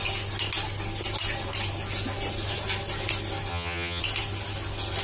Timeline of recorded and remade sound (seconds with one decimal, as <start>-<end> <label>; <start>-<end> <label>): 0.0-3.5 recorded; 3.5-4.0 remade; 4.0-5.0 recorded